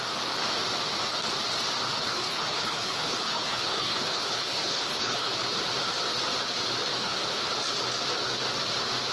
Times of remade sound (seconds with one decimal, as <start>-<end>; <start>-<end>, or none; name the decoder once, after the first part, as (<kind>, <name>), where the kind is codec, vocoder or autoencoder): 1.9-5.3 (codec, HILCodec); 6.9-7.5